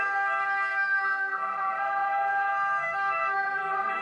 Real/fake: fake